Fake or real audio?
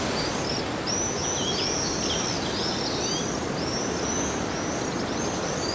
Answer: real